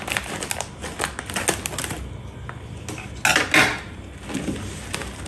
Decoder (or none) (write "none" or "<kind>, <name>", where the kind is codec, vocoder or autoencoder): none